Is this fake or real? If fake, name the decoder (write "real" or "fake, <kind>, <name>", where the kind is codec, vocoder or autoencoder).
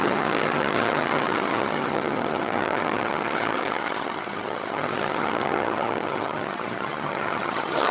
fake, vocoder, HiFi-GAN